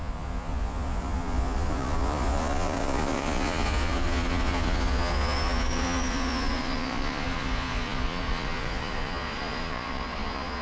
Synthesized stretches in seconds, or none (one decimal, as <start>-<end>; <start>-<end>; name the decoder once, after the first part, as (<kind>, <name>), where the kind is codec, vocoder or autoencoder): 0.0-10.6 (vocoder, Vocos)